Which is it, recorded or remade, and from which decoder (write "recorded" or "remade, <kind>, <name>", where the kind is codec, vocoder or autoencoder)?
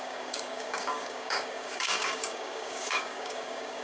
remade, codec, DAC